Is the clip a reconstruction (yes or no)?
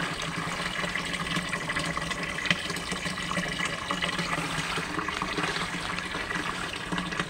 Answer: no